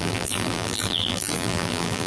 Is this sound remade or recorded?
remade